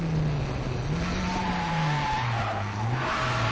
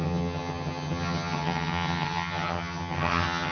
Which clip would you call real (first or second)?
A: first